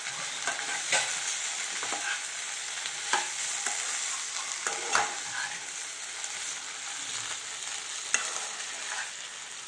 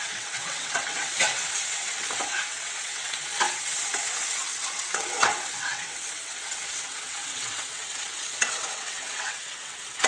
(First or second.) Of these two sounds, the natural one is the first